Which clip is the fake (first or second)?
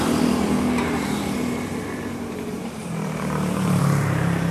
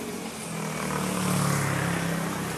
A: first